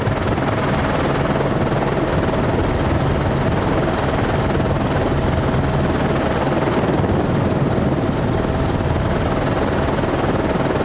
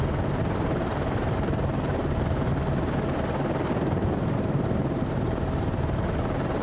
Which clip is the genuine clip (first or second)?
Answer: first